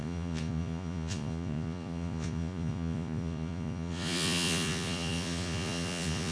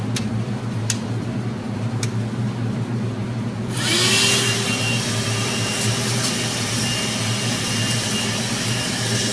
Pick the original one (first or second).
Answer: second